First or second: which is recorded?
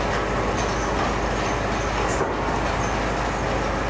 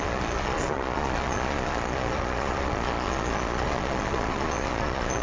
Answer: first